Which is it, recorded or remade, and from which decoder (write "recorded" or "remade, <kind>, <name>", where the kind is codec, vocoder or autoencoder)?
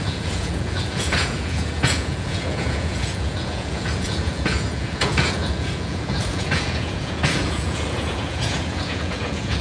remade, vocoder, Vocos